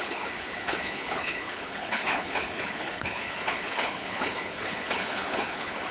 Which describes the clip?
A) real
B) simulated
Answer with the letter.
B